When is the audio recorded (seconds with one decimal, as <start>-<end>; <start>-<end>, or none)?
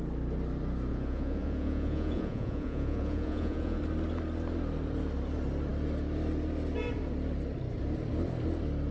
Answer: 0.0-0.9; 3.8-8.9